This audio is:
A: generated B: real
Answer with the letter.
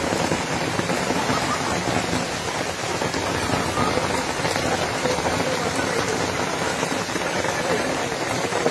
B